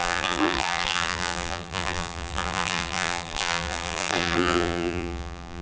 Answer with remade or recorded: remade